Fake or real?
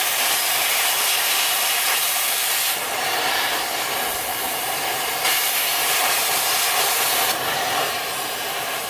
fake